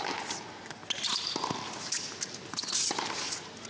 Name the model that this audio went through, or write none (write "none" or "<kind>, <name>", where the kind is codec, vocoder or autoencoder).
none